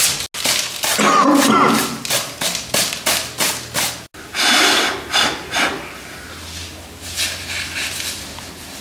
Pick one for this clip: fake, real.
real